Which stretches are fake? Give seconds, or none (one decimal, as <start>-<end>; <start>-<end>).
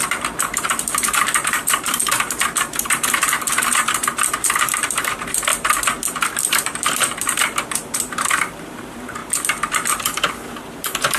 0.0-5.5; 6.4-9.2; 10.5-11.2